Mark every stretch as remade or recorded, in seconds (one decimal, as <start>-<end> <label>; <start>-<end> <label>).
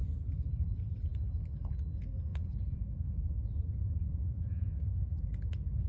0.0-2.3 recorded; 2.3-5.9 remade